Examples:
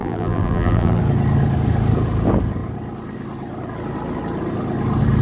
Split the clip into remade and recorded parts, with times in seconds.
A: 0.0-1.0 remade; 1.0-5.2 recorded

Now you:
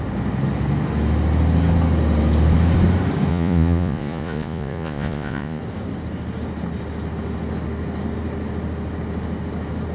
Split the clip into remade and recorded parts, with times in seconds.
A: 0.0-3.3 recorded; 3.3-5.6 remade; 5.6-9.9 recorded

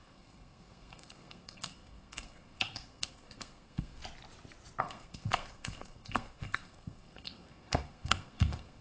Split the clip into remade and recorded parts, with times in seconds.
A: 0.0-4.0 remade; 4.0-4.8 recorded; 4.8-8.8 remade

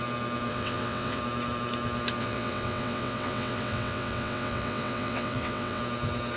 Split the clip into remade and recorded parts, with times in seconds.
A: 0.0-0.5 recorded; 0.5-1.2 remade; 1.2-2.2 recorded; 2.2-5.8 remade; 5.8-6.4 recorded

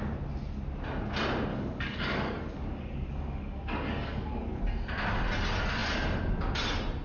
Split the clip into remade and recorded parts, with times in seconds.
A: 0.0-1.5 recorded; 1.5-4.6 remade; 4.6-7.0 recorded

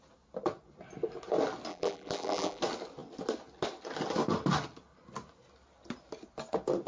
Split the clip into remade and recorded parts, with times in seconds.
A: 0.0-1.7 recorded; 1.7-2.6 remade; 2.6-6.9 recorded

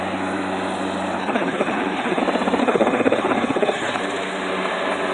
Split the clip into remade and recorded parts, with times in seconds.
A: 0.0-1.2 recorded; 1.2-2.2 remade; 2.2-2.6 recorded; 2.6-4.0 remade; 4.0-5.1 recorded

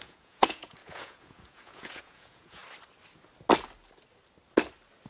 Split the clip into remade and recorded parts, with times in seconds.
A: 0.0-2.6 remade; 2.6-5.1 recorded